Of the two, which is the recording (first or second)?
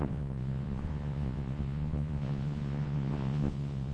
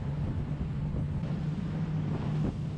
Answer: second